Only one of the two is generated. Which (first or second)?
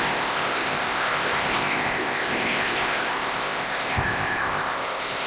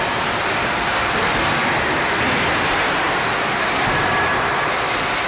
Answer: first